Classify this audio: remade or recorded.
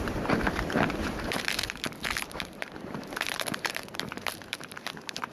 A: remade